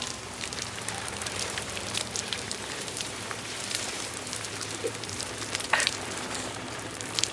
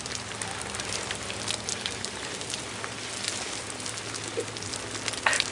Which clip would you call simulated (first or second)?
first